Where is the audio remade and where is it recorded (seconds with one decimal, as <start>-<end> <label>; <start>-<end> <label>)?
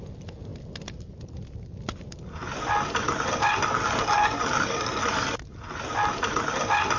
0.0-7.0 recorded